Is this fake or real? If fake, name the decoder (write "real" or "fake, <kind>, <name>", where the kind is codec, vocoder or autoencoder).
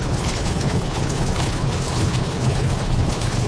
fake, codec, HILCodec